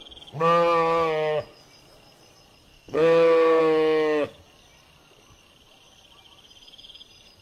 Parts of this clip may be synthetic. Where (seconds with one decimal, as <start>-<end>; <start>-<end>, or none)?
2.7-3.6